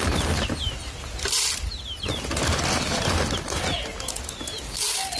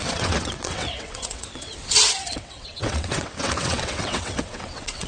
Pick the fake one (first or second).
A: second